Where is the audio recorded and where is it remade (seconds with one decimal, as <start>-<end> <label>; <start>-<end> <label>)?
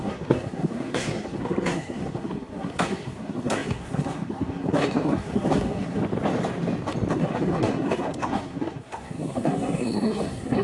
0.0-6.0 remade; 6.0-7.1 recorded; 7.1-10.6 remade